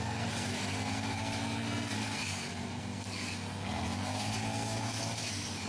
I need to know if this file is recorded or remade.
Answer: remade